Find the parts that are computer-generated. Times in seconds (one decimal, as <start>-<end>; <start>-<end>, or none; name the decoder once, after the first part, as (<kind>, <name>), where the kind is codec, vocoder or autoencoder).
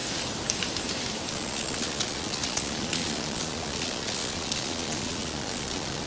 1.3-6.1 (vocoder, Vocos)